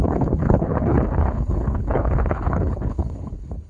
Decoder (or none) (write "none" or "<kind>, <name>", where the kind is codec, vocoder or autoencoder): codec, HILCodec